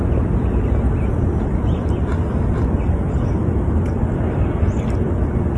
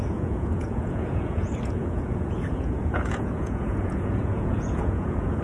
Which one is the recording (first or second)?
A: first